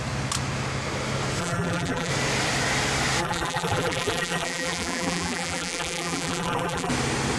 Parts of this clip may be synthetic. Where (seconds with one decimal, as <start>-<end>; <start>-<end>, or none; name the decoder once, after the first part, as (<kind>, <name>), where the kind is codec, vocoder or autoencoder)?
1.4-2.1 (vocoder, BigVGAN v2); 3.2-6.9